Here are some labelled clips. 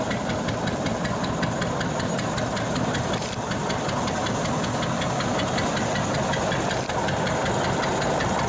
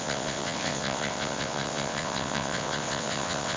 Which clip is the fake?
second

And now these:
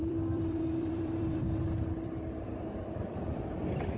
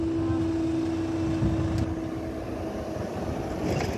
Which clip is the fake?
first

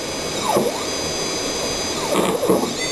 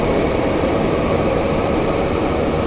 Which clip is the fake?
second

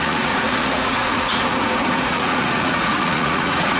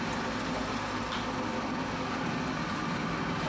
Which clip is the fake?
first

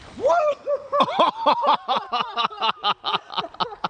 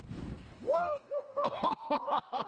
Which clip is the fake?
second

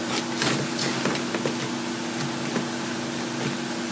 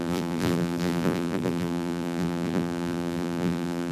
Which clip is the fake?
second